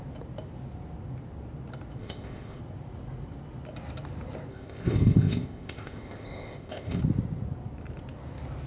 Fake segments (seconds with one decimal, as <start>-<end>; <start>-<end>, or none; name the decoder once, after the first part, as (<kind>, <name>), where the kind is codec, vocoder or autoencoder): 2.0-2.6 (codec, ZipCodec); 4.5-7.0